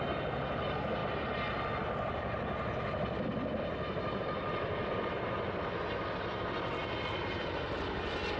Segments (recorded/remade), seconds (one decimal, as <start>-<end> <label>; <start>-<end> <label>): 0.0-8.4 recorded